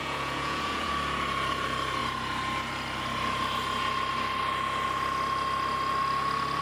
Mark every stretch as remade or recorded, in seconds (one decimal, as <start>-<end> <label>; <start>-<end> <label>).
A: 0.0-0.9 remade; 0.9-6.6 recorded